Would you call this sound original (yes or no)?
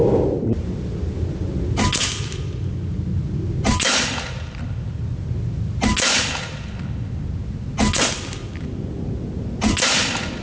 yes